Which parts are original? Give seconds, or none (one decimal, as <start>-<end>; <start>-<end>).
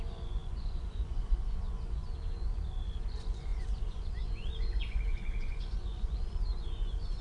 none